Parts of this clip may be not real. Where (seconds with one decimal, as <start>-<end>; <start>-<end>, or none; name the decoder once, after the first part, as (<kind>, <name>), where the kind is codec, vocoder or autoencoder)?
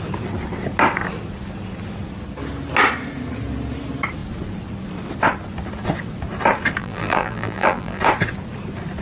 6.8-8.0 (vocoder, BigVGAN v2)